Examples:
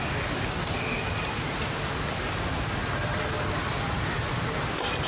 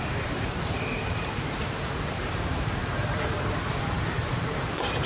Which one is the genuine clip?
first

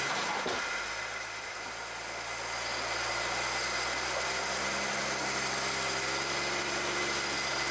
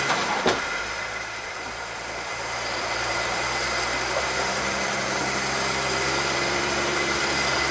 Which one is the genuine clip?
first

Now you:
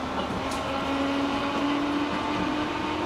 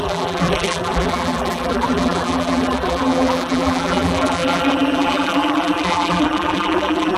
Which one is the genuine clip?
first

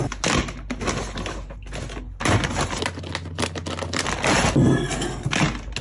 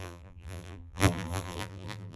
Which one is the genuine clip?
first